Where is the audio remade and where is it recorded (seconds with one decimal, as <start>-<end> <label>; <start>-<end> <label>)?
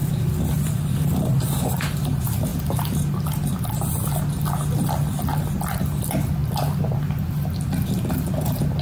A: 0.0-0.9 remade; 0.9-8.8 recorded